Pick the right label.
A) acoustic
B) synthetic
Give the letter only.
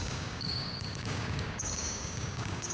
B